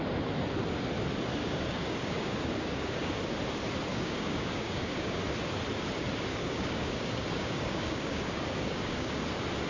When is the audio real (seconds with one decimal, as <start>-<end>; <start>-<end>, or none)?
0.0-1.4; 3.2-3.9; 5.2-6.3; 9.2-9.7